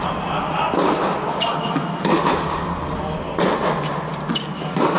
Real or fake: real